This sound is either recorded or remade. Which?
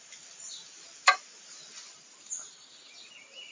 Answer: recorded